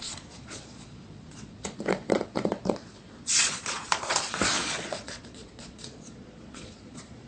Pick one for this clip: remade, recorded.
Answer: remade